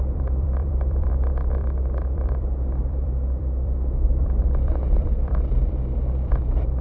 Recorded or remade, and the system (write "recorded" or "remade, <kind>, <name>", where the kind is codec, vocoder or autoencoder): remade, vocoder, BigVGAN v2